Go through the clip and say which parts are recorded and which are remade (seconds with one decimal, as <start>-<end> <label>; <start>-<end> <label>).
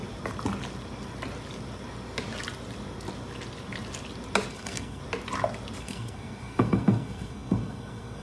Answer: 0.0-4.5 recorded; 4.5-5.0 remade; 5.0-5.8 recorded; 5.8-8.2 remade